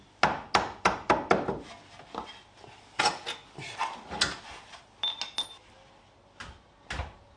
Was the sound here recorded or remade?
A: recorded